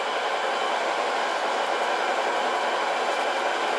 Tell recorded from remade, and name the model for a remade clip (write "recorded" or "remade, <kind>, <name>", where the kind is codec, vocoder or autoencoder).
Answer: recorded